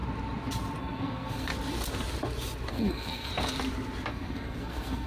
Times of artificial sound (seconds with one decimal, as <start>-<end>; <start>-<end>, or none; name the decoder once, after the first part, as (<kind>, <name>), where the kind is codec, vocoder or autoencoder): 0.8-1.5 (codec, SNAC); 2.7-3.3; 4.1-5.1